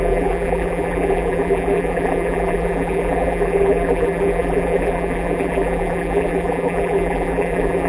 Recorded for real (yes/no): no